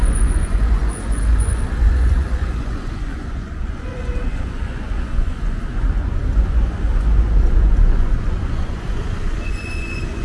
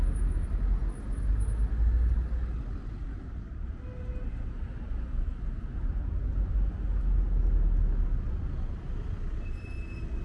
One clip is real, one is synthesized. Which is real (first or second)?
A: second